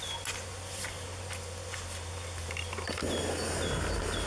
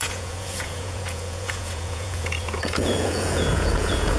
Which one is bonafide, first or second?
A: first